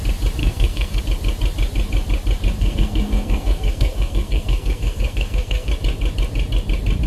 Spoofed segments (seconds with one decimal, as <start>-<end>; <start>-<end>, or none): 0.4-1.0; 2.6-5.7